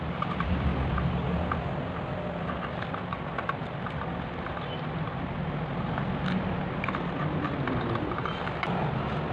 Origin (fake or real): real